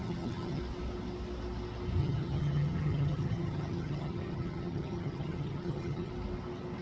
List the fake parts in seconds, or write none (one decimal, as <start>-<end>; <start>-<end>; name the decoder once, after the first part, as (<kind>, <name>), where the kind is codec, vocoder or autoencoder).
0.0-0.6 (vocoder, HiFi-GAN); 2.0-6.1